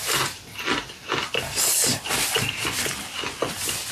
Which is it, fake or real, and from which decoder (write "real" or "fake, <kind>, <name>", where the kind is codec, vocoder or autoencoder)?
fake, vocoder, BigVGAN v2